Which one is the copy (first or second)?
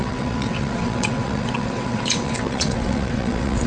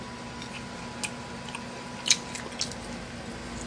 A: first